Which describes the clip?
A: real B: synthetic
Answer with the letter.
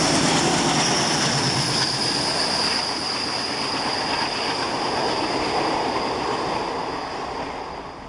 A